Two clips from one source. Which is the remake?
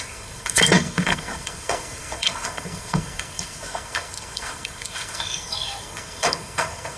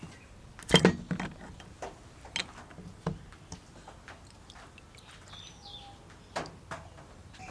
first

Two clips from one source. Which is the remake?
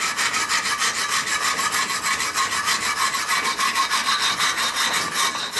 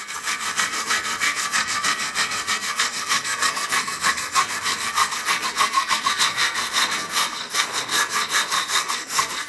second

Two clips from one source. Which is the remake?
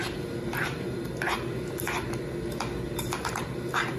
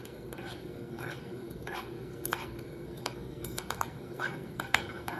second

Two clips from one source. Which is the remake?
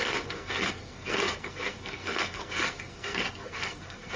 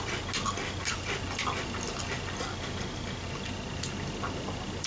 first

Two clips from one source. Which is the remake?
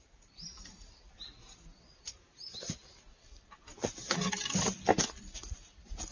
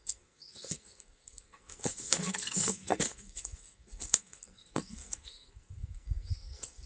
second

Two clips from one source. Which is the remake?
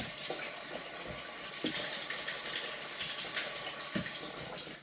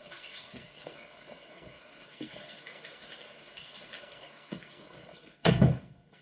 second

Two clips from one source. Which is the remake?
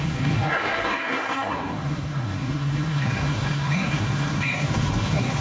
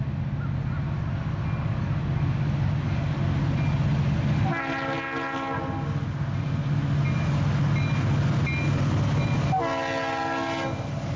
first